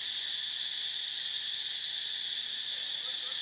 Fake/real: real